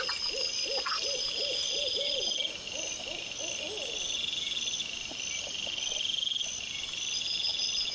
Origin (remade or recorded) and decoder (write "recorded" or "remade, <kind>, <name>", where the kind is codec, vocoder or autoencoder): recorded